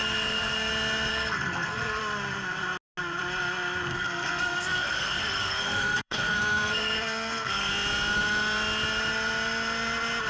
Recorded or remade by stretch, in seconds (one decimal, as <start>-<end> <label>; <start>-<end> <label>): 0.0-0.7 remade; 0.7-1.1 recorded; 1.1-2.0 remade; 2.0-3.9 recorded; 3.9-7.7 remade; 7.7-10.3 recorded